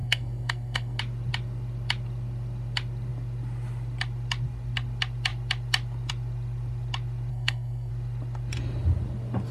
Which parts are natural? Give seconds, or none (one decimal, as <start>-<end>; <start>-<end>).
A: 1.0-7.3; 7.9-9.5